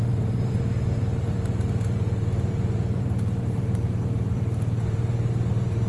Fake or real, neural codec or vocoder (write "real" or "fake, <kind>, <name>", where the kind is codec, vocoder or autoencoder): fake, vocoder, BigVGAN v2